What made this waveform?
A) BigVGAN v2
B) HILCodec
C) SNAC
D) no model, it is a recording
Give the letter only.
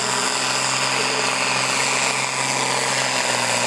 D